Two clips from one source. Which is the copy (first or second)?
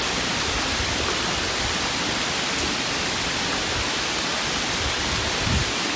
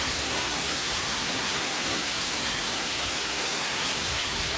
second